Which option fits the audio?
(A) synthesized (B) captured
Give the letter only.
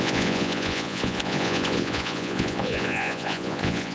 A